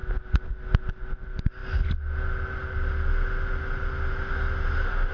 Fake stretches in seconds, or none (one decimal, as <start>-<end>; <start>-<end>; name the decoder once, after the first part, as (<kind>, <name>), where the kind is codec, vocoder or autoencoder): none